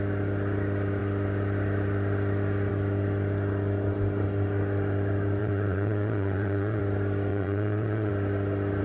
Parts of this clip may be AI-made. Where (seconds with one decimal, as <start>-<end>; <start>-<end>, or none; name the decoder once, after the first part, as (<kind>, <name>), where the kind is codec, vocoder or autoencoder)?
5.4-6.8 (vocoder, Vocos); 7.3-8.1